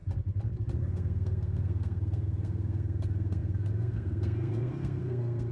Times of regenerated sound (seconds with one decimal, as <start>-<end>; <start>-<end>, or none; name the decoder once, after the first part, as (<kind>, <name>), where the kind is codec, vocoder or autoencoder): 0.8-5.5 (codec, SNAC)